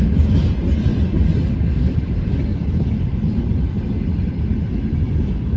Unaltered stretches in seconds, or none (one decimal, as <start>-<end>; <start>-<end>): 0.0-0.9; 4.3-4.9